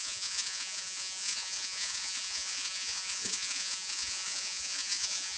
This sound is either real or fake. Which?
fake